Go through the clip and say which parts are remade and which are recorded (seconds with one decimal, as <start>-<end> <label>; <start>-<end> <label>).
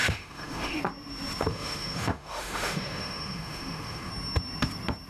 0.0-0.8 remade; 0.8-1.5 recorded; 1.5-4.1 remade; 4.1-5.1 recorded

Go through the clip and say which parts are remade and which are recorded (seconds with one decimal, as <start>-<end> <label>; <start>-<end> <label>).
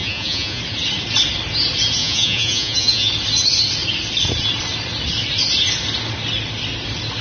0.0-0.6 remade; 0.6-2.0 recorded; 2.0-3.1 remade; 3.1-7.2 recorded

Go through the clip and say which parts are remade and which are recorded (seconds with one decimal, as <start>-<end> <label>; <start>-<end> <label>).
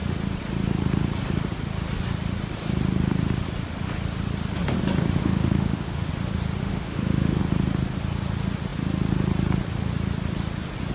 0.0-5.2 recorded; 5.2-6.1 remade; 6.1-6.6 recorded; 6.6-7.4 remade; 7.4-10.9 recorded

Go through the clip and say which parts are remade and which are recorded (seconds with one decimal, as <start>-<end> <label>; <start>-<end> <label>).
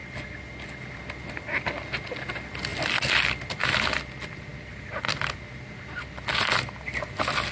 0.0-7.5 recorded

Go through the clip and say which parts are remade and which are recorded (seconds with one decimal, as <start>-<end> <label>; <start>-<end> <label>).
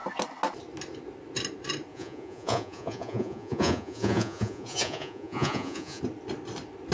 0.0-1.9 recorded; 1.9-6.0 remade; 6.0-6.9 recorded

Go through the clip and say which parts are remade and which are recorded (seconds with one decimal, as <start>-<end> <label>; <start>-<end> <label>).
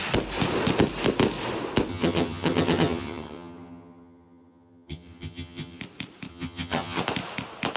0.0-1.9 recorded; 1.9-5.8 remade; 5.8-6.3 recorded; 6.3-7.0 remade; 7.0-7.8 recorded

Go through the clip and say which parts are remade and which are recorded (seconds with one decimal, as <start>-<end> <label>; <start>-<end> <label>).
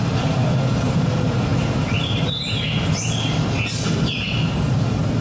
0.0-5.2 recorded